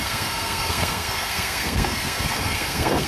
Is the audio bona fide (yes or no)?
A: no